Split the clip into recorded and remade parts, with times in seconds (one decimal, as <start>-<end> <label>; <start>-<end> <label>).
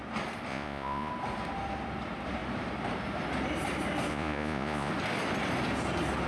0.0-0.5 recorded; 0.5-1.1 remade; 1.1-4.1 recorded; 4.1-4.9 remade; 4.9-6.3 recorded